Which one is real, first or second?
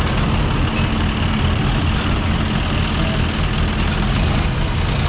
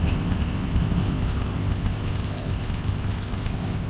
first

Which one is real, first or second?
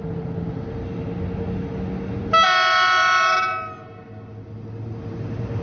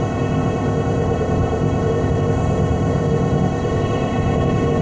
first